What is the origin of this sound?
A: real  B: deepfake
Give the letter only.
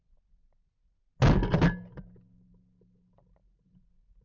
A